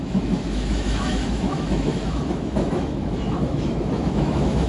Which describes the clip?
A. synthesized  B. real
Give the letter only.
A